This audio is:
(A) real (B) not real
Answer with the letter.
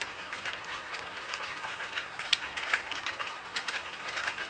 B